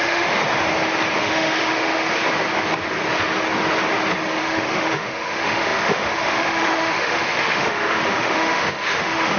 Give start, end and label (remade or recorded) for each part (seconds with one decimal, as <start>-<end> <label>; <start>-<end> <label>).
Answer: 0.0-0.4 remade; 0.4-1.2 recorded; 1.2-2.2 remade; 2.2-4.4 recorded; 4.4-9.4 remade